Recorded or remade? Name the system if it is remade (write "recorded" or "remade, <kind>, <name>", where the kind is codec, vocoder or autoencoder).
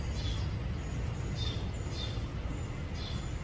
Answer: recorded